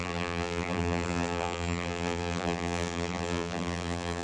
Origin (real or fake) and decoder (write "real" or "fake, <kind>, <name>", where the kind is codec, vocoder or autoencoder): fake, vocoder, BigVGAN v2